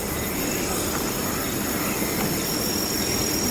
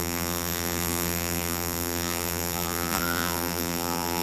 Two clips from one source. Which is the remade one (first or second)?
second